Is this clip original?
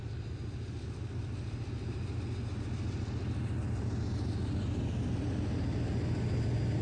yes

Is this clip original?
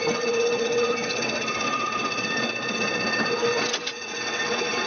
no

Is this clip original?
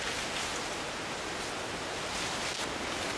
yes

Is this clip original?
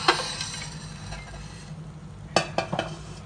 yes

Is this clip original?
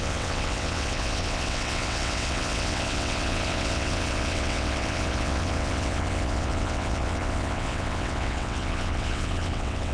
no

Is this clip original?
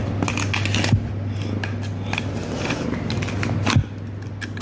yes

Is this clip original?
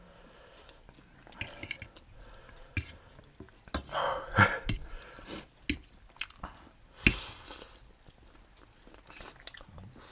yes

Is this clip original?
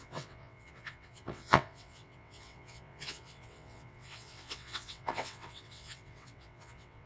no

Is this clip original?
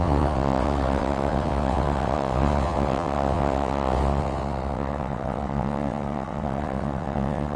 no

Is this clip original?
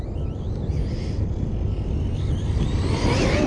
yes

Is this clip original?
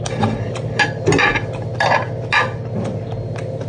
yes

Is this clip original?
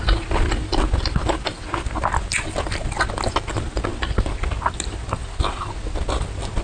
yes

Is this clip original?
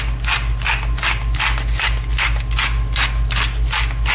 yes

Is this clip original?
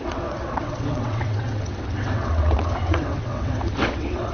no